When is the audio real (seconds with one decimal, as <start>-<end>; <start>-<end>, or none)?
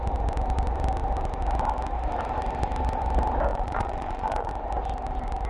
0.0-3.5; 4.5-5.5